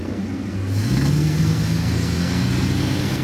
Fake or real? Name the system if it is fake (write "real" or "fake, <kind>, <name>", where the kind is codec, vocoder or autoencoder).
fake, codec, SNAC